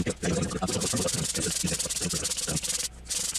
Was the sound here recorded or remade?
recorded